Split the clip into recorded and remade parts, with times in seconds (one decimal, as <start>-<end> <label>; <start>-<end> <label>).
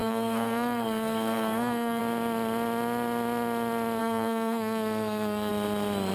0.0-2.0 remade; 2.0-4.0 recorded; 4.0-5.5 remade; 5.5-6.1 recorded